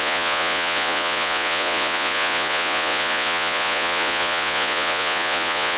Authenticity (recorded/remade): remade